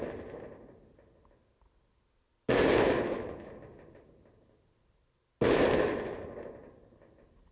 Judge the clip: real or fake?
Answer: real